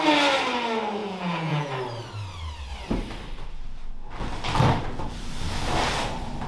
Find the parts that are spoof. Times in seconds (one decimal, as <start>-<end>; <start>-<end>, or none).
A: 1.0-1.7